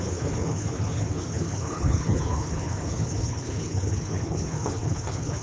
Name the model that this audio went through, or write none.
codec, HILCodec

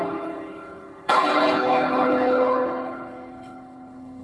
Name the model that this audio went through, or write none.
codec, HILCodec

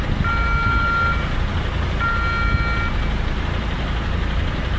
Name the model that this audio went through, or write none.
none